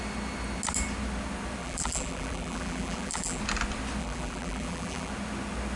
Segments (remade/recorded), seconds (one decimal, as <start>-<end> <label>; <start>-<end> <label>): 0.0-1.6 recorded; 1.6-3.4 remade; 3.4-4.0 recorded; 4.0-5.1 remade; 5.1-5.8 recorded